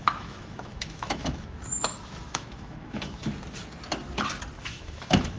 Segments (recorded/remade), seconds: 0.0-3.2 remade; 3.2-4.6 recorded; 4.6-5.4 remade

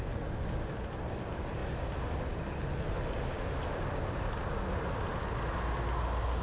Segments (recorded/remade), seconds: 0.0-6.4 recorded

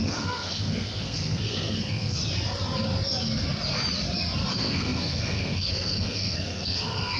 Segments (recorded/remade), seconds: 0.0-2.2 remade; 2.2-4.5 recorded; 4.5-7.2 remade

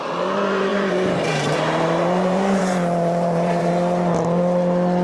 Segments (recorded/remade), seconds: 0.0-0.7 recorded; 0.7-3.7 remade; 3.7-5.0 recorded